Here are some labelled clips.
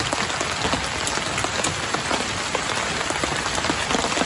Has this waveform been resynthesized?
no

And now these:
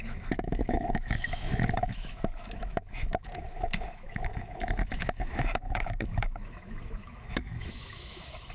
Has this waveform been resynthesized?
yes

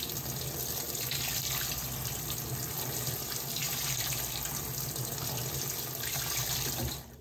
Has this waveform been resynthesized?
no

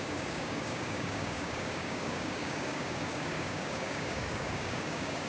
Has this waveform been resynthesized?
yes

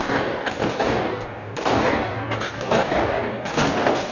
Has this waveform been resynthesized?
yes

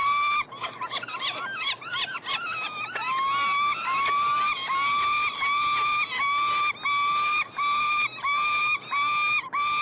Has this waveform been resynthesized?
no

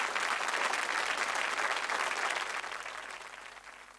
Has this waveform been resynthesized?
no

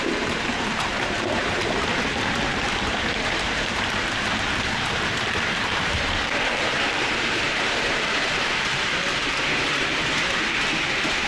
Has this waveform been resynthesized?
yes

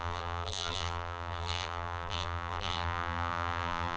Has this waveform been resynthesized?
yes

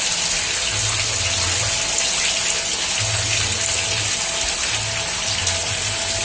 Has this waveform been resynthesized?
no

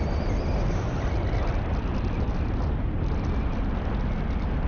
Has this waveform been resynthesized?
no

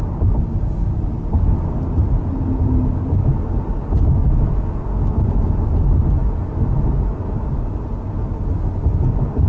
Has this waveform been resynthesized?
no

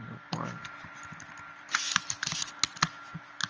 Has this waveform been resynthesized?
no